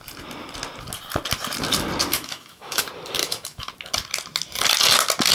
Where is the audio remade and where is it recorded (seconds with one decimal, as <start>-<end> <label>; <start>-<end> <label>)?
0.0-2.1 recorded; 2.1-2.8 remade; 2.8-3.2 recorded; 3.2-3.7 remade; 3.7-5.3 recorded